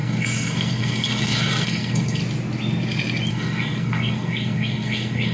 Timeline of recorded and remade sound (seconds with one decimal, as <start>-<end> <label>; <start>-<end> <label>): 0.0-2.2 remade; 2.2-3.3 recorded; 3.3-5.3 remade